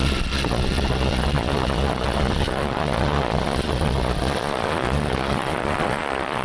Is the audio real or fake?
fake